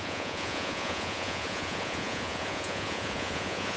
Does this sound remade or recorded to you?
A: remade